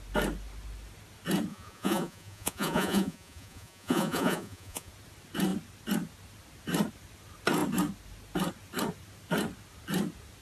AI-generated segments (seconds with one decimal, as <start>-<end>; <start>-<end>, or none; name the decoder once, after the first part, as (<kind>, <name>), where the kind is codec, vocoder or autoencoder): 1.5-4.9 (vocoder, Vocos)